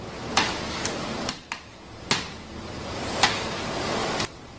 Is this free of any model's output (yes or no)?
yes